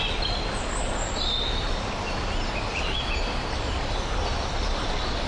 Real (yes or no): yes